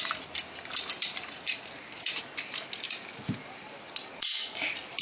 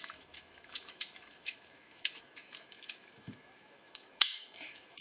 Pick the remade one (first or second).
second